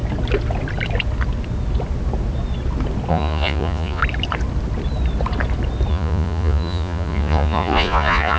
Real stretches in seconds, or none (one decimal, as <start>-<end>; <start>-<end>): 0.0-3.1; 4.0-5.9